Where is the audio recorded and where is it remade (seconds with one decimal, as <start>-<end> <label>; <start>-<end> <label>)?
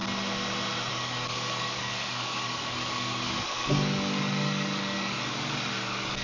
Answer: 0.0-0.9 recorded; 0.9-6.2 remade